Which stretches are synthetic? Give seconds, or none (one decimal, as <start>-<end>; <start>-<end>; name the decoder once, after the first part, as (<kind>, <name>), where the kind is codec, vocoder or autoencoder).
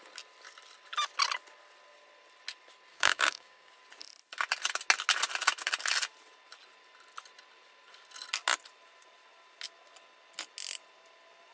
2.9-3.7 (codec, DAC)